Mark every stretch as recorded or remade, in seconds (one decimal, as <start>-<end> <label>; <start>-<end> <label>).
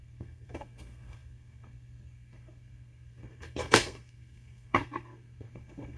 0.0-6.0 remade